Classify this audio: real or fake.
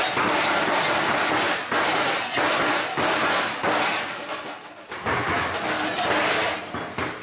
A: real